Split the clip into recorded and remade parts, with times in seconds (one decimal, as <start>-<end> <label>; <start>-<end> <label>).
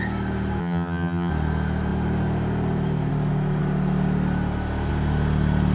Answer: 0.0-0.6 recorded; 0.6-1.3 remade; 1.3-5.7 recorded